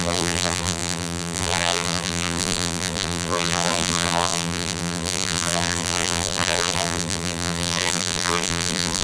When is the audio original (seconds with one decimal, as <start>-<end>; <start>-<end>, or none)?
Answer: none